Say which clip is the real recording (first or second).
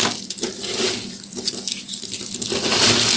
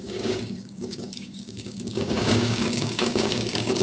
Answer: first